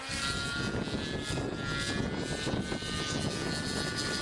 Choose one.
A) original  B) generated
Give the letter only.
A